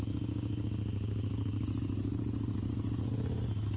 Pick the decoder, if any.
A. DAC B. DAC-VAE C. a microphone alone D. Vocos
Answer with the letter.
C